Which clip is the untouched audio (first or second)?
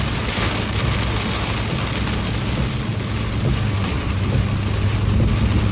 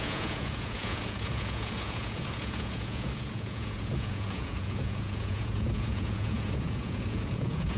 first